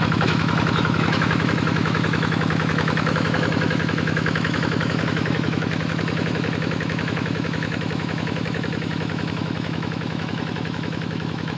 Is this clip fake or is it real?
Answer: fake